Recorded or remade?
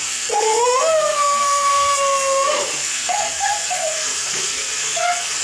remade